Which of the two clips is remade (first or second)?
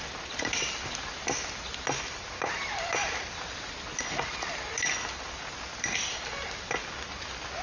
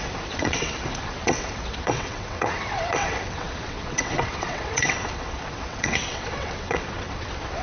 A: second